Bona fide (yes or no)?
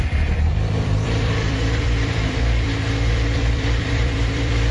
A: no